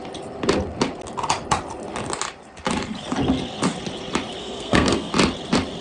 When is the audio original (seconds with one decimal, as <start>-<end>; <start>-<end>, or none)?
0.0-4.4; 5.1-5.8